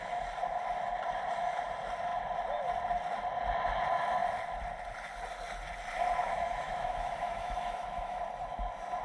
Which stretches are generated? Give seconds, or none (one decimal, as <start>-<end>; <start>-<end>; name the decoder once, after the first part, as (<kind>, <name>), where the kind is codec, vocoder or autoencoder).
6.2-8.2 (autoencoder, DAC-VAE)